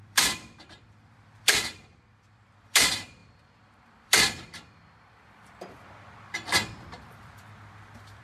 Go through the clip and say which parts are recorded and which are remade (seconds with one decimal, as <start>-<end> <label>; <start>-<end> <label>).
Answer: 0.0-8.2 remade